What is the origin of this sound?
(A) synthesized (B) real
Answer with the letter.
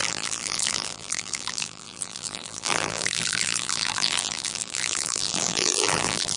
A